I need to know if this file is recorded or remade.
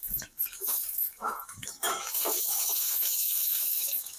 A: remade